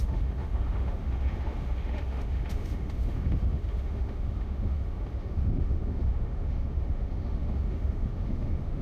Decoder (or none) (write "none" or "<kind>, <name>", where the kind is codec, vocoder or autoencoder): autoencoder, DAC-VAE